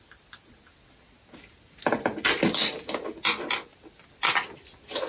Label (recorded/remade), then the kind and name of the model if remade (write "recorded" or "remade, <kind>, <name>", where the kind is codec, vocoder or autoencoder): recorded